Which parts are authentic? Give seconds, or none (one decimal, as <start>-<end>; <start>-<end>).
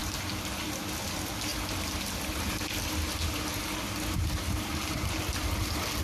0.0-6.0